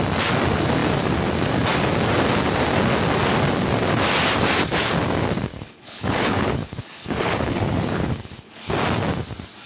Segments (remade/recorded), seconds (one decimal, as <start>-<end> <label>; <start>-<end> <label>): 0.0-5.5 recorded; 5.5-8.7 remade; 8.7-9.7 recorded